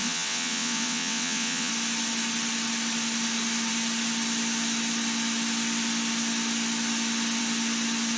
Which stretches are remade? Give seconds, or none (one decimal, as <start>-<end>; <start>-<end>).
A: 0.0-1.7

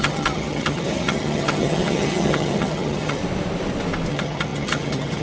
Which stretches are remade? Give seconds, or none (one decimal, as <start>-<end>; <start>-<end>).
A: 0.0-3.2; 4.1-5.2

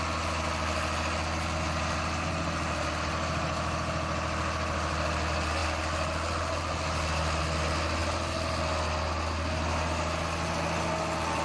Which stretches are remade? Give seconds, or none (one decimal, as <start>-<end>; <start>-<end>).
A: none

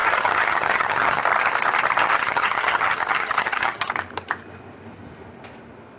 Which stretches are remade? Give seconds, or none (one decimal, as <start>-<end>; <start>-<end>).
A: 0.0-1.2; 2.0-3.9

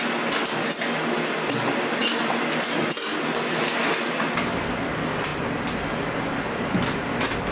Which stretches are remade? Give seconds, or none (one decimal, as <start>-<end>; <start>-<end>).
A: none

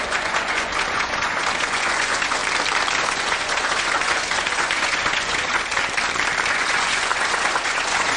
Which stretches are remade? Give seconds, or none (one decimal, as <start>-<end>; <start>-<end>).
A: 0.0-2.4; 3.0-5.7; 6.5-8.2